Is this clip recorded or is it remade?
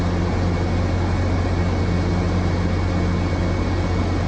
recorded